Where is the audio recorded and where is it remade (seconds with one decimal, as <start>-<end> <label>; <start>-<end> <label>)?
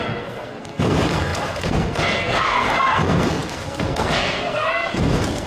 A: 0.0-5.5 remade